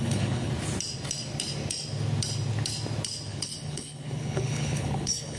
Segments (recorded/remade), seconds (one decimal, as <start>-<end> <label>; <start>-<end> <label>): 0.0-0.5 remade; 0.5-3.3 recorded; 3.3-5.4 remade